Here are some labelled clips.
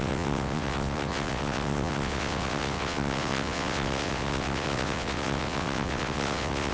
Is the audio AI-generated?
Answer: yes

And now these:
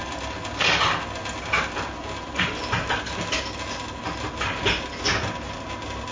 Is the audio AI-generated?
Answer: no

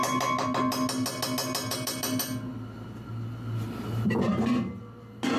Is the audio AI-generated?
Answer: no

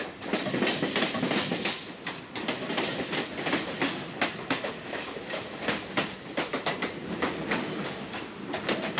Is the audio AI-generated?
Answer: no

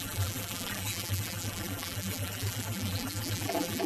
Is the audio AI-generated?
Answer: yes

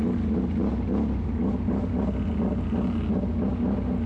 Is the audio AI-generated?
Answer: no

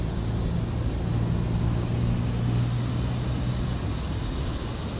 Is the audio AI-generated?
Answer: no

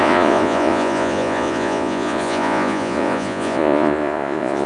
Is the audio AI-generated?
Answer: yes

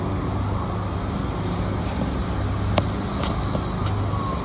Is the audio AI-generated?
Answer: no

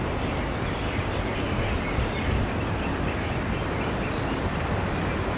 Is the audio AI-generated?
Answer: no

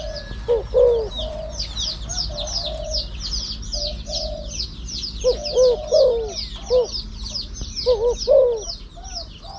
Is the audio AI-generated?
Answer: no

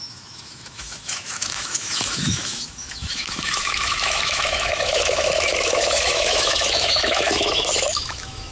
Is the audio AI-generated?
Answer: yes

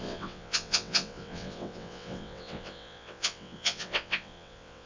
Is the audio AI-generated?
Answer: yes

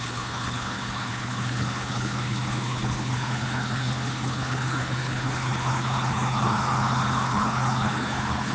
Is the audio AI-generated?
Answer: yes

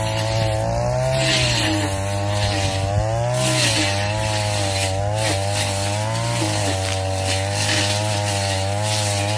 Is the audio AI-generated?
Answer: no